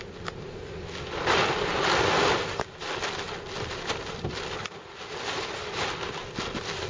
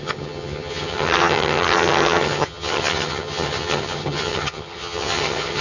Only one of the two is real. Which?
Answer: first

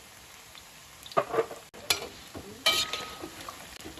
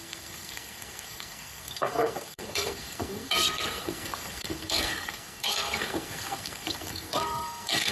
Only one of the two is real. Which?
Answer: first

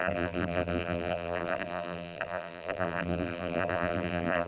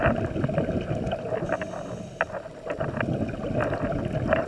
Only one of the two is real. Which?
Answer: second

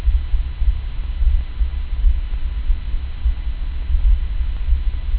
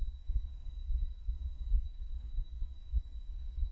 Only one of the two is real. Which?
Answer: first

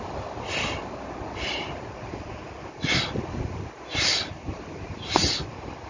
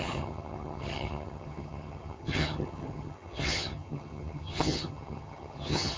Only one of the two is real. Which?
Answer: first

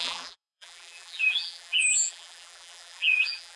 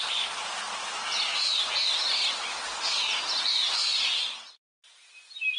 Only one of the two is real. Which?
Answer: second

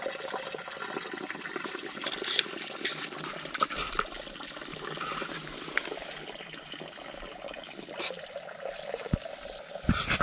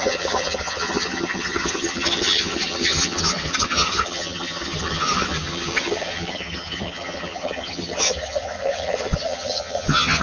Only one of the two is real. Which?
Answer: first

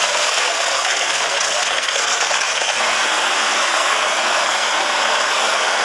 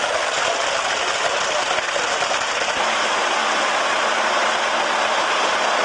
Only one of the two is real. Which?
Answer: second